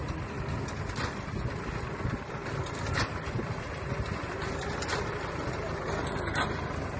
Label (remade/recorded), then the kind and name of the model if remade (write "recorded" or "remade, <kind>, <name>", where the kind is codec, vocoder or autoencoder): recorded